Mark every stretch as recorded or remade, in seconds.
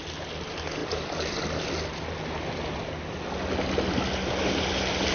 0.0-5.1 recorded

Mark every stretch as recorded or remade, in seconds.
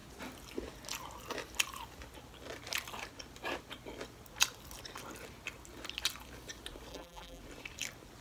0.0-6.9 recorded; 6.9-7.4 remade; 7.4-8.2 recorded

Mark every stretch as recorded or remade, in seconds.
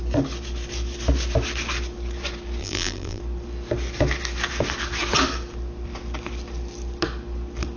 0.0-2.6 recorded; 2.6-3.2 remade; 3.2-7.8 recorded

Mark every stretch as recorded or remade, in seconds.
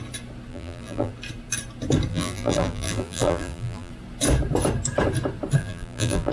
0.0-0.5 recorded; 0.5-1.1 remade; 1.1-2.1 recorded; 2.1-3.9 remade; 3.9-5.6 recorded; 5.6-6.3 remade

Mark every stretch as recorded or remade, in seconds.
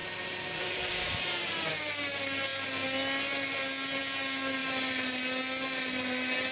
0.0-1.7 remade; 1.7-6.5 recorded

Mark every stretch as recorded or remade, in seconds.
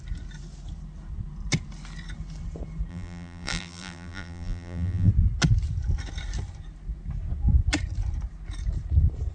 0.0-2.9 recorded; 2.9-5.1 remade; 5.1-9.3 recorded